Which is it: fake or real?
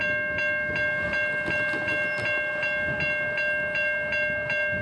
real